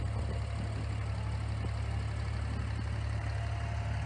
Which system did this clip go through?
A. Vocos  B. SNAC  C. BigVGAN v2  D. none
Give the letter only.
D